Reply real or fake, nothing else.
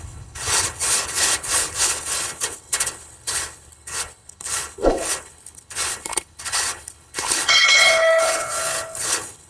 fake